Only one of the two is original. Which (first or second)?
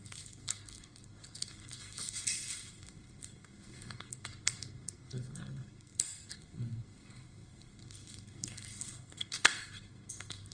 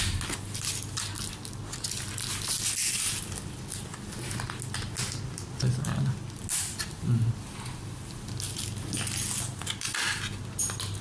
second